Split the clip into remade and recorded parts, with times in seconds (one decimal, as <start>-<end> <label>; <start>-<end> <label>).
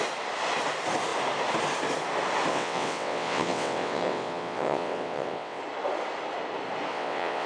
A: 0.0-2.5 recorded; 2.5-5.6 remade; 5.6-6.9 recorded; 6.9-7.5 remade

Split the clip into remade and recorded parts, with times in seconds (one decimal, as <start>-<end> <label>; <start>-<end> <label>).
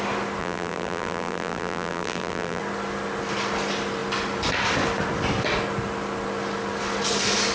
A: 0.0-0.4 recorded; 0.4-2.6 remade; 2.6-7.5 recorded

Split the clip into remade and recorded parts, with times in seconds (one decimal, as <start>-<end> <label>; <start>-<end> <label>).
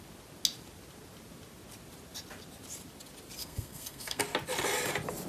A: 0.0-3.4 recorded; 3.4-4.2 remade; 4.2-5.3 recorded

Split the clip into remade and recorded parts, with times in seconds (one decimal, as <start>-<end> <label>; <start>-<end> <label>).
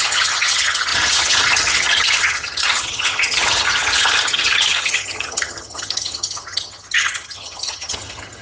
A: 0.0-8.4 remade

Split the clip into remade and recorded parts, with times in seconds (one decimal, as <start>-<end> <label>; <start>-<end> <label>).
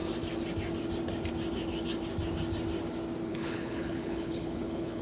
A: 0.0-3.3 recorded; 3.3-5.0 remade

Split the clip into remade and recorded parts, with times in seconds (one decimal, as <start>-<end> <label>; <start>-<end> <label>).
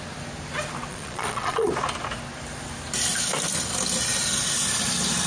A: 0.0-0.9 recorded; 0.9-1.7 remade; 1.7-5.3 recorded